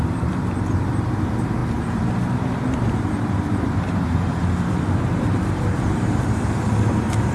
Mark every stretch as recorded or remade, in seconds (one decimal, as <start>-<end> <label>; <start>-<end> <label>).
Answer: 0.0-1.6 remade; 1.6-2.3 recorded; 2.3-7.3 remade